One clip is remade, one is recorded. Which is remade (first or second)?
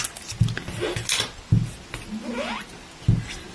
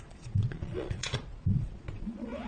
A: second